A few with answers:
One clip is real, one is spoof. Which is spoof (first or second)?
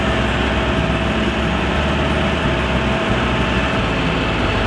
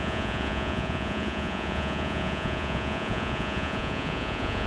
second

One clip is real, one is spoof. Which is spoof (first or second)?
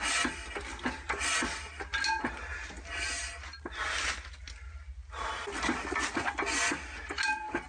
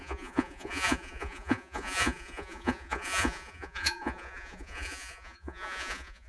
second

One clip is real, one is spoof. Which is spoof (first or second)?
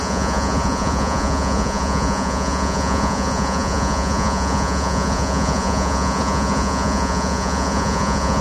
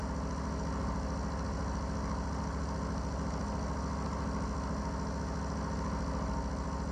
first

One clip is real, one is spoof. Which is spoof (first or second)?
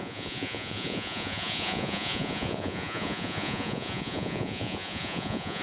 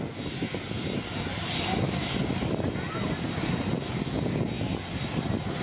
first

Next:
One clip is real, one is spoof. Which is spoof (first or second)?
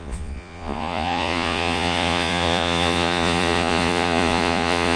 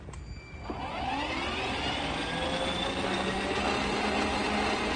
first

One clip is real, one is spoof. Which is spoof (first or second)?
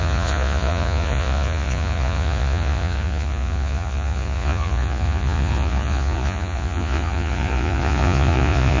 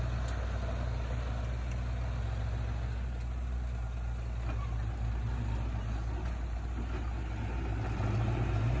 first